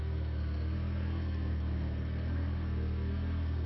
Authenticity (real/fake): fake